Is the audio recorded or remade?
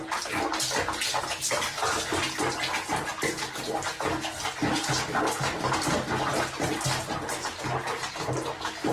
recorded